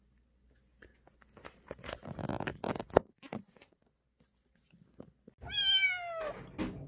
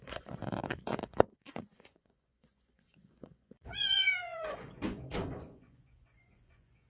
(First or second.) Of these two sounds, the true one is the first